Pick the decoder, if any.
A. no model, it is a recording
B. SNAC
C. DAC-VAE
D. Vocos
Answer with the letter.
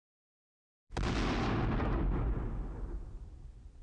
A